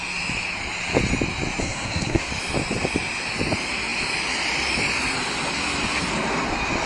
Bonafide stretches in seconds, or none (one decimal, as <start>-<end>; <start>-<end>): 0.0-1.6; 2.3-6.9